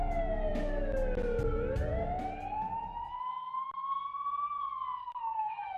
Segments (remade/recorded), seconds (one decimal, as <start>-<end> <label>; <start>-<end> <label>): 0.0-5.0 recorded; 5.0-5.8 remade